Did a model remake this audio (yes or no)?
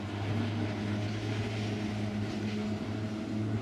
no